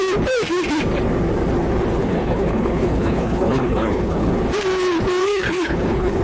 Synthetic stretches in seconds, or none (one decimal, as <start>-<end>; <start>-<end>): 2.0-4.3; 5.2-6.2